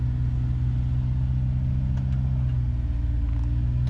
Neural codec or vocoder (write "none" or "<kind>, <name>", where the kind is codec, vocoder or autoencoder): none